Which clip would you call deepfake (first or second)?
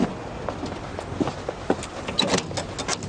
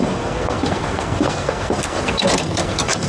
second